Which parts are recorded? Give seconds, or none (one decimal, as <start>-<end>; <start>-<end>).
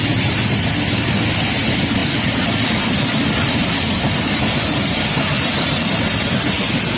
0.0-2.0; 4.4-7.0